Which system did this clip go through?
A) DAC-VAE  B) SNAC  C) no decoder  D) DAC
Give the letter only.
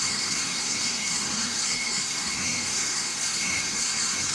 B